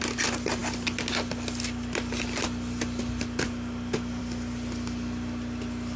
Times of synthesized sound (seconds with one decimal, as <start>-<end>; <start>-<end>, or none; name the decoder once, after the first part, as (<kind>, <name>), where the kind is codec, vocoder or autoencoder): none